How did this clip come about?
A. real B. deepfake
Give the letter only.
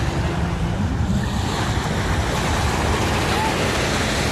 A